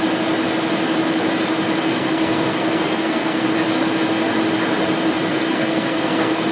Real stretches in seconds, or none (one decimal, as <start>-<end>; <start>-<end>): 0.0-1.9; 3.5-5.3